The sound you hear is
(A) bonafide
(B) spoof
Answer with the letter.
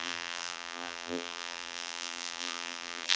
B